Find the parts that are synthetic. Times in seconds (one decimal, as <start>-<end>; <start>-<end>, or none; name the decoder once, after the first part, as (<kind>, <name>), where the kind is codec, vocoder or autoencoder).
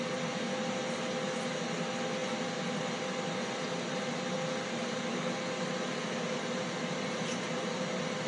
none